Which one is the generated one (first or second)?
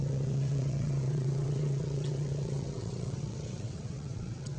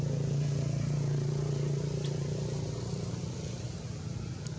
first